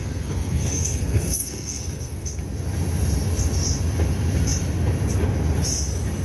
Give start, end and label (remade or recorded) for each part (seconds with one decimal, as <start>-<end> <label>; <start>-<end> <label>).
0.0-2.4 remade; 2.4-6.2 recorded